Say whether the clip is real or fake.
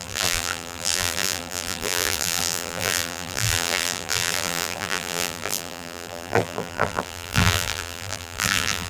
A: fake